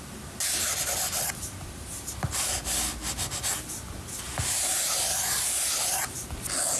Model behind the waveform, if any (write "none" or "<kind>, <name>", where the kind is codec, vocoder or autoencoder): none